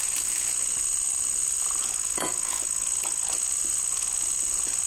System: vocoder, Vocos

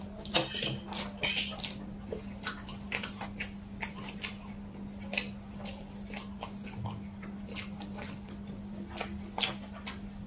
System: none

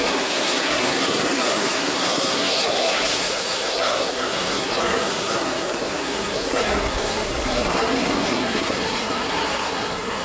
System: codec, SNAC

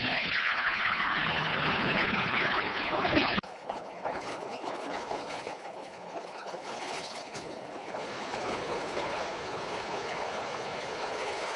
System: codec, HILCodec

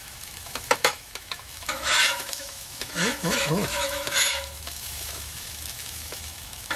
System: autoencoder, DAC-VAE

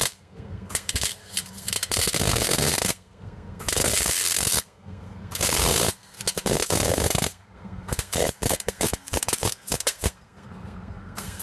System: codec, SNAC